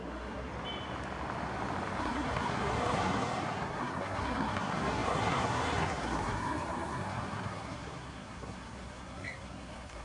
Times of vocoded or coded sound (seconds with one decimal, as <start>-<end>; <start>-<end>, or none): 0.0-0.5; 2.0-10.0